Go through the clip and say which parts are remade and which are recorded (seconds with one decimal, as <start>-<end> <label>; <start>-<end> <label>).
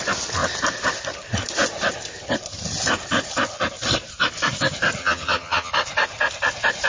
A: 0.0-5.0 recorded; 5.0-5.7 remade; 5.7-6.9 recorded